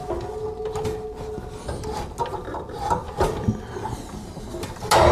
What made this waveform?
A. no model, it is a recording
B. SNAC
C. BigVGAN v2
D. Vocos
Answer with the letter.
A